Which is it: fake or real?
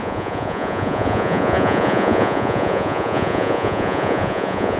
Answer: fake